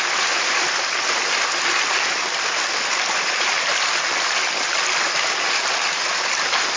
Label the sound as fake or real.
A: real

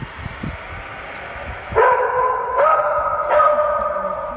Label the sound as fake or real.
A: real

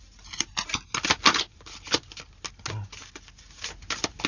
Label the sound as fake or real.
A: real